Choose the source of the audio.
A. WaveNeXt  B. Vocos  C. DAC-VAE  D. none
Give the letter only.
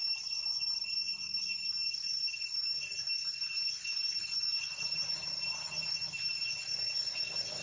D